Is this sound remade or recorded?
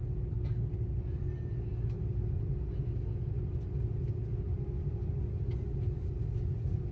recorded